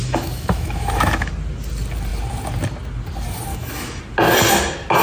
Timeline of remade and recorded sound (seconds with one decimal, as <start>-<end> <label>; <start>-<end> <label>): 0.0-1.3 remade; 1.3-3.5 recorded; 3.5-4.0 remade; 4.0-5.0 recorded